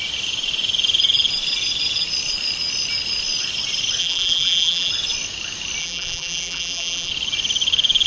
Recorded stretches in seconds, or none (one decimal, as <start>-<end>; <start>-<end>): 0.0-4.0; 4.9-5.8; 7.1-8.1